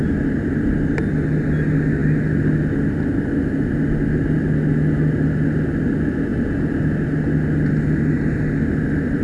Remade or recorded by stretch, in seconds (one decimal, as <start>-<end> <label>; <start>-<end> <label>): 0.0-9.2 recorded